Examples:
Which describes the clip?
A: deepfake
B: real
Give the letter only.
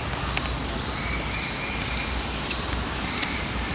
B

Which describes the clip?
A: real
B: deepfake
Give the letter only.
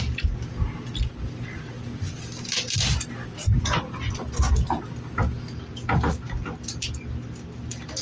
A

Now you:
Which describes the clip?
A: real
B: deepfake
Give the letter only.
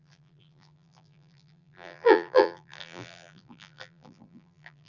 B